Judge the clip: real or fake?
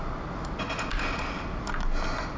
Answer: real